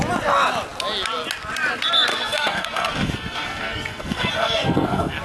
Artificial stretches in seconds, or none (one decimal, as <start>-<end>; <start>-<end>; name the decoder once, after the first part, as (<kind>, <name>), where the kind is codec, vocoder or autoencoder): 2.1-5.2 (codec, SNAC)